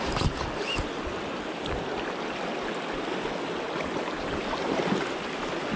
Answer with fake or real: real